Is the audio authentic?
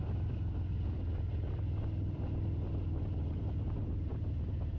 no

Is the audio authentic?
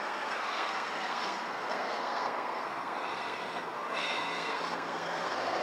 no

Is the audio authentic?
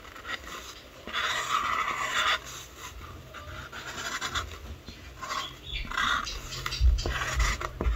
yes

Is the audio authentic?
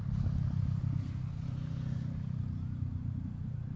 yes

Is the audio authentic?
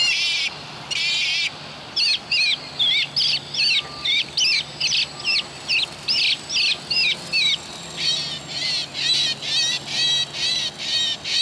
yes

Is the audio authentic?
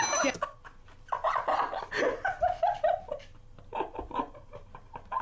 yes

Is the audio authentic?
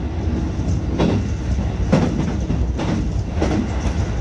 yes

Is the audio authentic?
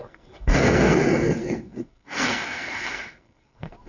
no